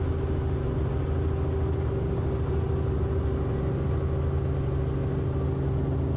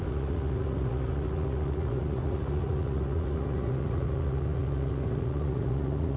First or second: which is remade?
second